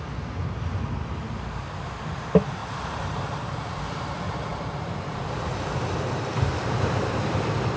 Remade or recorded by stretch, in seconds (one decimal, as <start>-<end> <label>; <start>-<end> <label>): 0.0-2.6 recorded; 2.6-3.8 remade; 3.8-4.5 recorded; 4.5-5.2 remade; 5.2-7.8 recorded

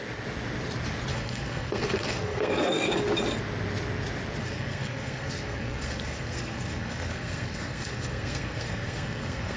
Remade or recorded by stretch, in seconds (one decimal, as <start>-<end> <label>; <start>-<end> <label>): 0.0-1.1 recorded; 1.1-2.9 remade; 2.9-4.4 recorded; 4.4-9.6 remade

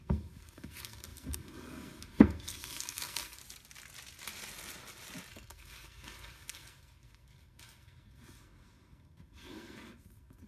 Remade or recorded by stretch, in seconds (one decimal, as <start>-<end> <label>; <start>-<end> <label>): 0.0-3.4 remade; 3.4-5.3 recorded; 5.3-10.5 remade

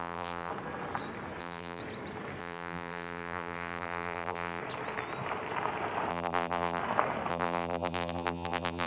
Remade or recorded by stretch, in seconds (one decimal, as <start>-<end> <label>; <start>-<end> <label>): 0.0-0.5 remade; 0.5-1.4 recorded; 1.4-1.8 remade; 1.8-2.4 recorded; 2.4-4.6 remade; 4.6-6.1 recorded; 6.1-6.8 remade; 6.8-7.3 recorded; 7.3-8.9 remade

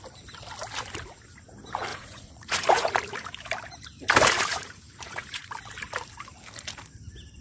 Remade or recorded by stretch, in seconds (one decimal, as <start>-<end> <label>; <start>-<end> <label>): 0.0-1.9 recorded; 1.9-2.9 remade; 2.9-4.5 recorded; 4.5-5.5 remade; 5.5-7.4 recorded